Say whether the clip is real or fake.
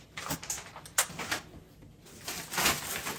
real